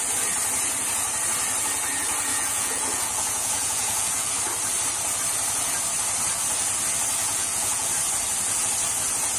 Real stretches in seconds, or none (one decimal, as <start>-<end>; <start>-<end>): 0.0-2.3; 4.3-7.2; 7.9-9.4